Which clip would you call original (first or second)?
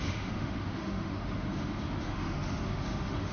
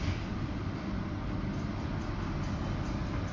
second